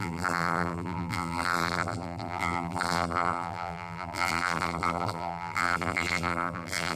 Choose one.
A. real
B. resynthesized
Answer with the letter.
B